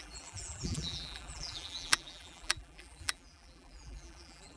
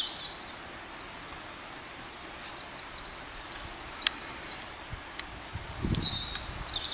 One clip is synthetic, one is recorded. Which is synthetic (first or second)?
first